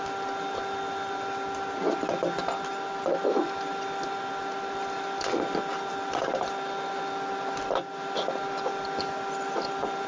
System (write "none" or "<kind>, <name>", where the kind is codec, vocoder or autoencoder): none